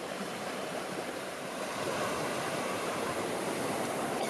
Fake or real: fake